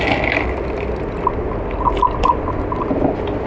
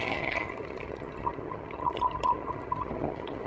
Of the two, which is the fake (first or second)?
second